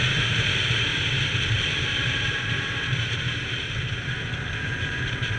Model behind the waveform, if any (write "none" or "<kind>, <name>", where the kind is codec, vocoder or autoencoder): vocoder, BigVGAN v2